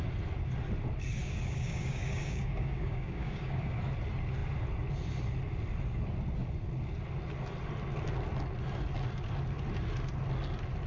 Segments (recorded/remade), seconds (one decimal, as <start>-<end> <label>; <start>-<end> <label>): 0.0-1.2 recorded; 1.2-3.8 remade; 3.8-10.9 recorded